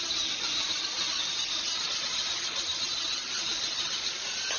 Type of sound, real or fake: real